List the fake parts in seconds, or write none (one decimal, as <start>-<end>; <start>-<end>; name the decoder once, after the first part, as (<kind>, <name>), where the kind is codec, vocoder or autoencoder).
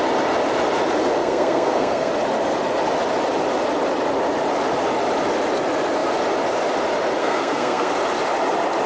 1.2-2.1 (codec, SNAC); 7.2-7.9